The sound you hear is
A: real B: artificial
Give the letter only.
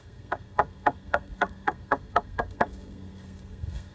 B